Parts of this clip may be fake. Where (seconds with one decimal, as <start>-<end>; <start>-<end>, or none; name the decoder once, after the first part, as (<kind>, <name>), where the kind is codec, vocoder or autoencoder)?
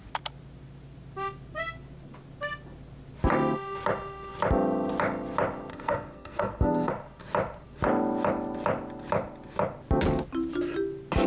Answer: 5.7-6.9 (codec, SNAC)